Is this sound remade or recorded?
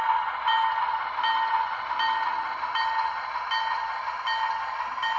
recorded